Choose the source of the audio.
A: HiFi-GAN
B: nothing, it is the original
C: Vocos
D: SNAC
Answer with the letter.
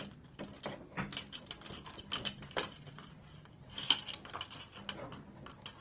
B